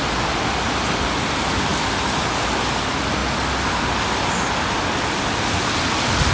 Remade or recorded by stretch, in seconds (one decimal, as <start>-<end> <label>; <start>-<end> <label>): 0.0-6.3 recorded